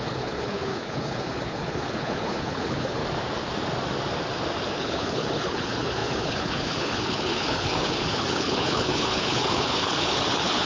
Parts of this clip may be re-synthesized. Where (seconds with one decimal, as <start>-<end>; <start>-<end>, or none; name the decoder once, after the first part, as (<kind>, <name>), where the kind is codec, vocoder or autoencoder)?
0.0-3.0 (codec, HILCodec); 4.7-10.7